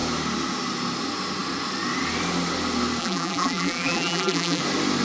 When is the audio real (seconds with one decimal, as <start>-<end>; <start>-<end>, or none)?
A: 0.0-3.0; 4.6-5.0